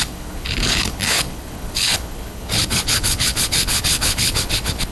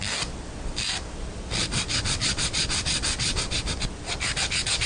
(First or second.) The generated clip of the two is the first